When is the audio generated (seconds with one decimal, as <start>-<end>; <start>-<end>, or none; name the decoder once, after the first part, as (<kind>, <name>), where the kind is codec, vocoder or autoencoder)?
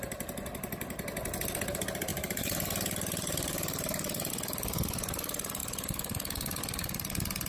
2.1-4.3 (vocoder, BigVGAN v2)